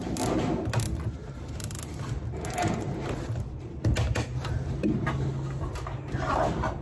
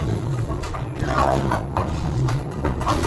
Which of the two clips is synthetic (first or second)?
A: second